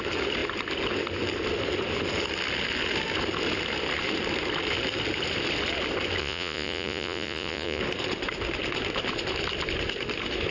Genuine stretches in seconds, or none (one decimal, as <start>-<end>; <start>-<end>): 0.0-6.2; 7.8-10.5